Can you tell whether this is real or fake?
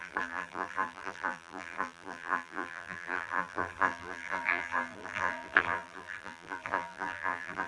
fake